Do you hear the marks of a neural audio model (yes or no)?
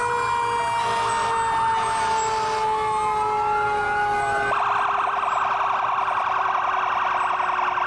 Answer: no